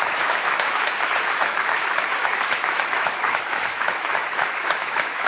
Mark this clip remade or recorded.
remade